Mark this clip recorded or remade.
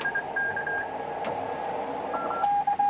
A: recorded